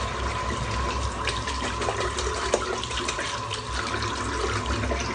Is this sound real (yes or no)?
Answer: yes